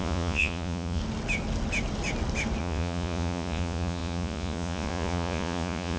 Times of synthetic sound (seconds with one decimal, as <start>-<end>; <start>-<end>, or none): 0.0-1.0; 2.6-6.0